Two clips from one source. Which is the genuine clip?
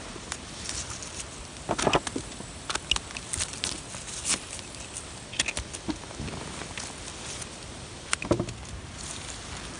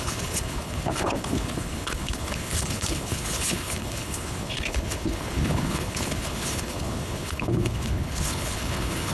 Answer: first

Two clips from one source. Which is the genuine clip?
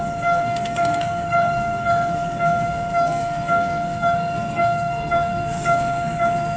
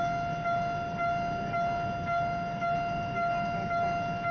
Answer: second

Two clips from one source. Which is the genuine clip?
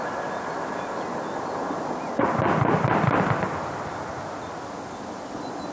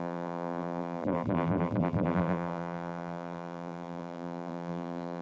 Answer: first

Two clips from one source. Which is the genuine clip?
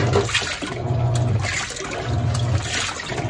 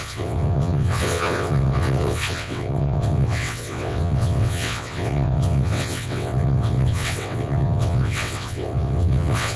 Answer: first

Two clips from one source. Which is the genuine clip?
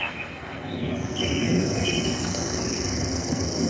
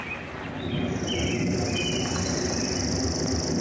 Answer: second